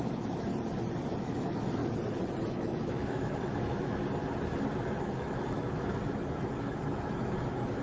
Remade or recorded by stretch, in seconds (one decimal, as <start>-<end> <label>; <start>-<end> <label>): 0.0-0.5 remade; 0.5-1.2 recorded; 1.2-1.8 remade; 1.8-2.5 recorded; 2.5-4.0 remade; 4.0-5.0 recorded; 5.0-7.8 remade